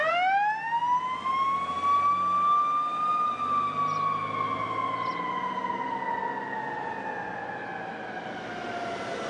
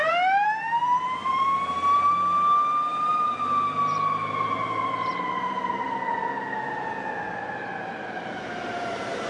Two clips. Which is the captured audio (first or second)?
first